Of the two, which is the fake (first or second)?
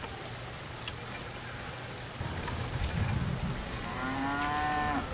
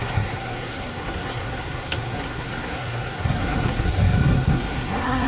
second